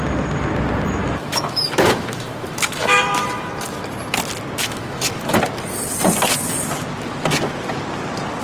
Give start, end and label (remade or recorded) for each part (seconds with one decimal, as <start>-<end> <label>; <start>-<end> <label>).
0.0-1.0 recorded; 1.0-3.5 remade; 3.5-4.6 recorded; 4.6-5.4 remade; 5.4-8.4 recorded